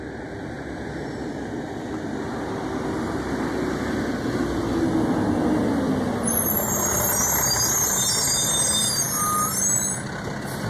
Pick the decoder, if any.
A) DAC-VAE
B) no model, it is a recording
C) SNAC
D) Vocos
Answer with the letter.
B